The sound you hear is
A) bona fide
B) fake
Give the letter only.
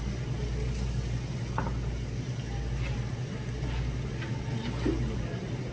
A